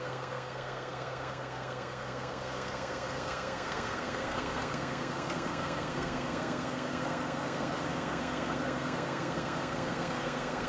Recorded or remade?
remade